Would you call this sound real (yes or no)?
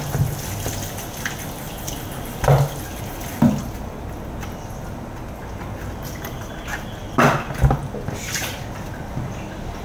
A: yes